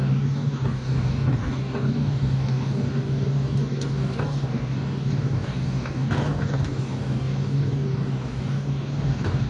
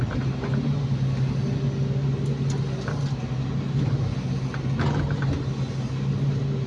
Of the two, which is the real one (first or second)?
second